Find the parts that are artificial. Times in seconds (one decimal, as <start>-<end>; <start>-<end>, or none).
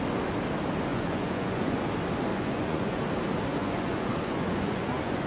0.9-1.8; 2.3-3.0; 3.5-5.3